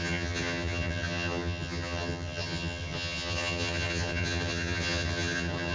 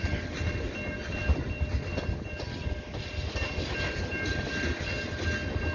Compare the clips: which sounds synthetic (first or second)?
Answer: first